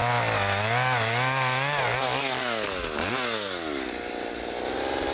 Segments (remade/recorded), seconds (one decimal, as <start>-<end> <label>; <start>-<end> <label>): 0.0-5.1 recorded